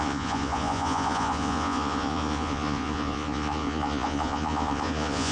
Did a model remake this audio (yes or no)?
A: yes